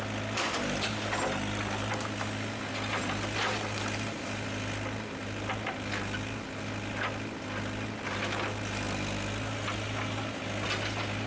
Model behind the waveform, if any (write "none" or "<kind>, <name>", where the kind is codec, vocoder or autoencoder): none